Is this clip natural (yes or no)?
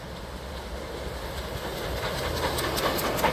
yes